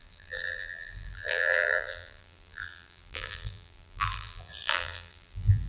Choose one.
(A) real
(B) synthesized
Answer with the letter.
B